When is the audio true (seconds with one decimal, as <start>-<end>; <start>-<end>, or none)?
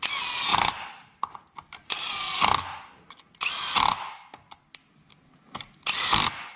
0.0-6.6